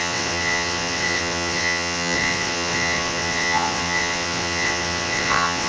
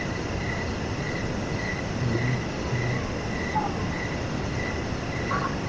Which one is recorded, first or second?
second